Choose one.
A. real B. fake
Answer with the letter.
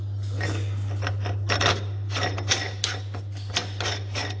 A